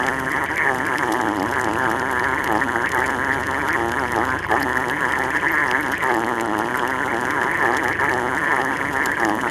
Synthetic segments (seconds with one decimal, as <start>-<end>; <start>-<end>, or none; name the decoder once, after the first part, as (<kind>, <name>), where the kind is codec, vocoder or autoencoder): 0.0-5.6 (vocoder, BigVGAN v2); 7.9-9.5